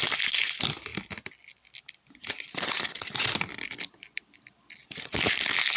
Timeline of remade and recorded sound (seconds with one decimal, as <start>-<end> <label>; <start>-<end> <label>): 0.0-5.8 recorded